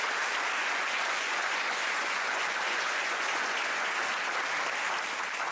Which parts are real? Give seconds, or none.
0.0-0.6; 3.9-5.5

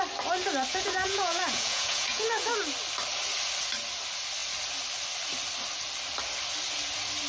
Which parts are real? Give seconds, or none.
0.0-0.7; 2.5-7.3

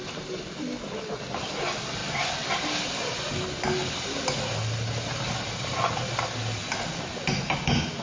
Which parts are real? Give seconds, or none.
0.0-8.0

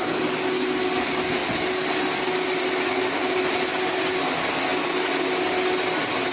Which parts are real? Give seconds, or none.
0.0-6.3

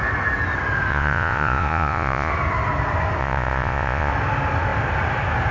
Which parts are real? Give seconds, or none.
0.0-0.9; 2.3-3.2; 4.1-5.5

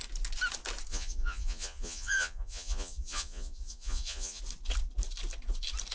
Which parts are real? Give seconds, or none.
0.0-0.9; 4.4-5.9